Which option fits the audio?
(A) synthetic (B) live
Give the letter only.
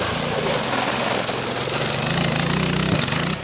B